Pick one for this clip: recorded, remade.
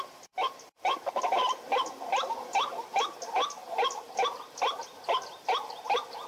recorded